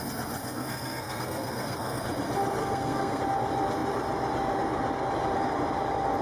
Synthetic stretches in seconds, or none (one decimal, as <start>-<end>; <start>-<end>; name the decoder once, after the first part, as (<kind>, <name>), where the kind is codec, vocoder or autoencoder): 0.4-2.0 (codec, SNAC); 2.6-3.2

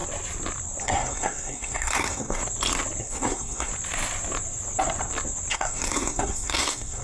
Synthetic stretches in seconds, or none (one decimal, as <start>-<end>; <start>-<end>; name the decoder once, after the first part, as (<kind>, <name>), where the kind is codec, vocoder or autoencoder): 0.8-2.4 (codec, SNAC); 3.0-3.7; 5.5-7.0